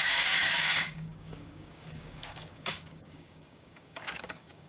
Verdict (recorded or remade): remade